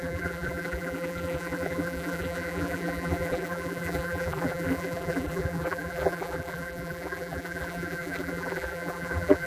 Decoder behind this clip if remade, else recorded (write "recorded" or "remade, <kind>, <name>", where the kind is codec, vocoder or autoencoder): remade, vocoder, BigVGAN v2